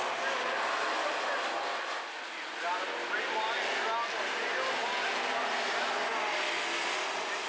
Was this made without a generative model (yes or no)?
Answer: yes